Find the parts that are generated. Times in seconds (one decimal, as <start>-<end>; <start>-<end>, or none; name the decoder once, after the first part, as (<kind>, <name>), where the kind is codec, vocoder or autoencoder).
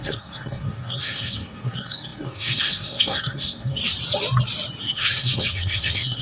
0.0-3.8 (codec, SNAC); 4.8-6.2